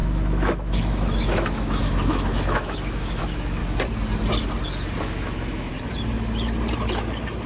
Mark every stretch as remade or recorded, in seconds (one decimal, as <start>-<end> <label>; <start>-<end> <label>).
0.0-3.6 remade; 3.6-5.0 recorded; 5.0-5.7 remade; 5.7-7.5 recorded